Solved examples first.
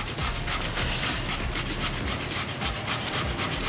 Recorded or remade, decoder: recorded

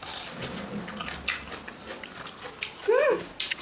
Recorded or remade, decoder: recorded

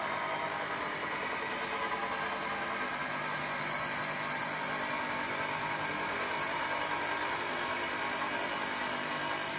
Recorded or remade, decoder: recorded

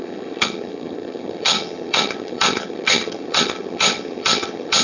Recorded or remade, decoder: remade, vocoder, HiFi-GAN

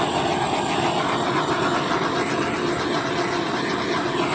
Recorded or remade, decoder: recorded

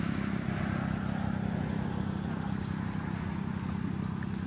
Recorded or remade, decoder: recorded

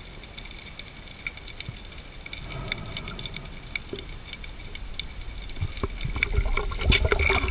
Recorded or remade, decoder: recorded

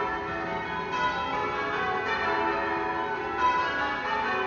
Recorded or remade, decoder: recorded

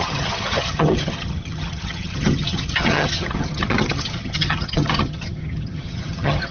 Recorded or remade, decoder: remade, vocoder, HiFi-GAN